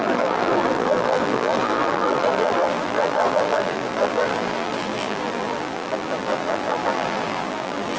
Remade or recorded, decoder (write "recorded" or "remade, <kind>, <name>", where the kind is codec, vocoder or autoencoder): remade, vocoder, BigVGAN v2